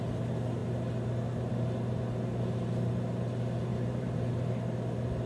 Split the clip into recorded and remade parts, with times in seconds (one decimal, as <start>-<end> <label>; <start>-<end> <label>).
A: 0.0-3.7 recorded; 3.7-4.5 remade; 4.5-5.3 recorded